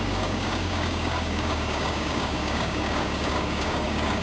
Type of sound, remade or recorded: remade